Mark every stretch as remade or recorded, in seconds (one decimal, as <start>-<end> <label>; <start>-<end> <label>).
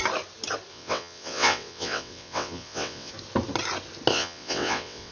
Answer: 0.0-0.7 recorded; 0.7-3.1 remade; 3.1-4.1 recorded; 4.1-5.1 remade